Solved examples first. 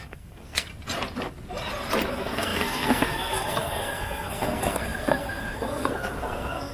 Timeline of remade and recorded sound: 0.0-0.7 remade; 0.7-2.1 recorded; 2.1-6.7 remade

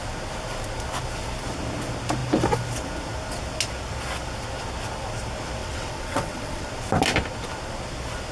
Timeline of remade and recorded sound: 0.0-5.6 recorded; 5.6-6.7 remade; 6.7-8.3 recorded